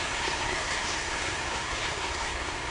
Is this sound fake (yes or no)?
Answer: yes